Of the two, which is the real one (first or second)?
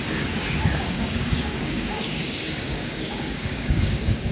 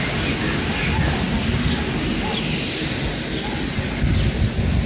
second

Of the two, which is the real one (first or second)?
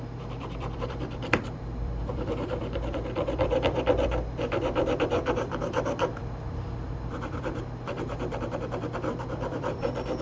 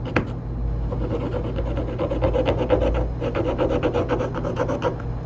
second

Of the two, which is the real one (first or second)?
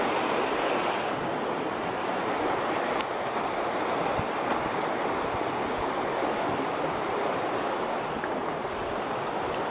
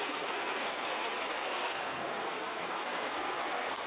first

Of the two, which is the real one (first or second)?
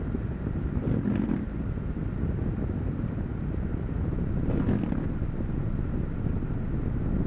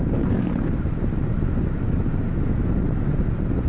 first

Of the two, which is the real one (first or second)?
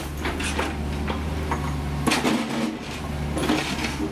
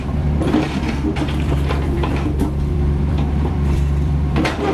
first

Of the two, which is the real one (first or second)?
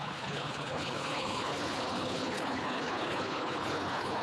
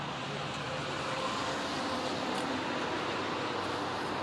second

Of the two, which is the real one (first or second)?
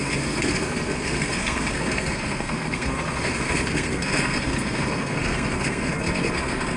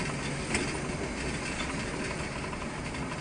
second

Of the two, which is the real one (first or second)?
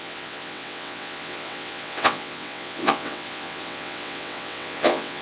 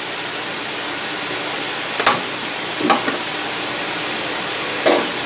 second